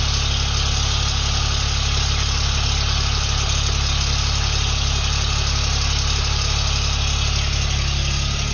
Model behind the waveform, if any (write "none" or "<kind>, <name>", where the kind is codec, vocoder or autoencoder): none